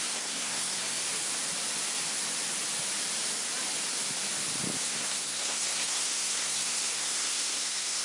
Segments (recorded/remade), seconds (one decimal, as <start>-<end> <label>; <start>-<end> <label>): 0.0-1.0 remade; 1.0-4.8 recorded; 4.8-8.0 remade